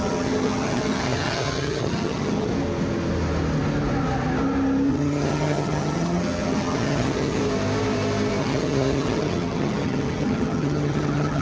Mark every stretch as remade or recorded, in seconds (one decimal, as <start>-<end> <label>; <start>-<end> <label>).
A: 0.0-2.5 remade; 2.5-4.9 recorded; 4.9-7.4 remade; 7.4-8.4 recorded; 8.4-11.4 remade